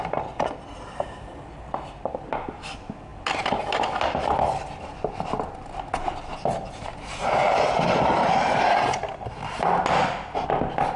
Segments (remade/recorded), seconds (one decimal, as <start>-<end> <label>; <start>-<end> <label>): 0.0-11.0 recorded